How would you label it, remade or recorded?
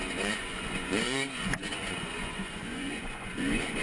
remade